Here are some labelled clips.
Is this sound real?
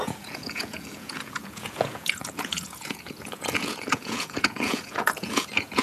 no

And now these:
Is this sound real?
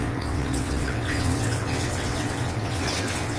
no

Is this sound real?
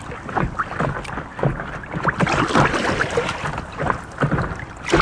yes